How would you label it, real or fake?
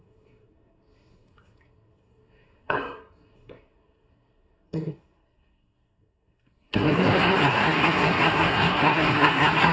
fake